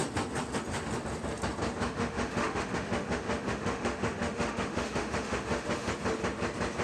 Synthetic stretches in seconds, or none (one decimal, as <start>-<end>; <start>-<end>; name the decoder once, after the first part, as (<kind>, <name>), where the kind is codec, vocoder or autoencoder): 1.8-5.9 (autoencoder, DAC-VAE)